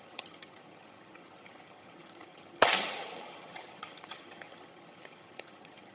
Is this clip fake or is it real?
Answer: fake